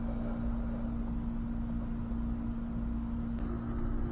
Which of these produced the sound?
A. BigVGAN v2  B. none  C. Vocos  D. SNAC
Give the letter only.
B